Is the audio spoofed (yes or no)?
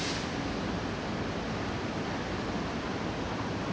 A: no